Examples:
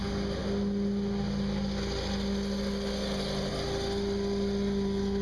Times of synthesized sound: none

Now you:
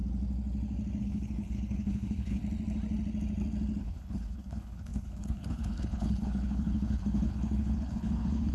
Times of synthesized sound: 1.0-2.4; 3.8-8.5

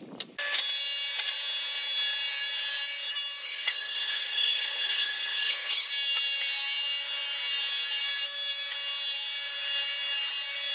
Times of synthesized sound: 3.4-5.9

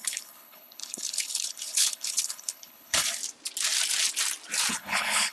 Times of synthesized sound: 0.0-3.2; 4.7-5.3